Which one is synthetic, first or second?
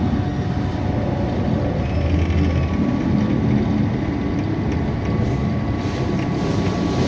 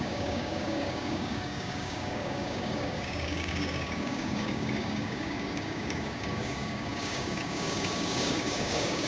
second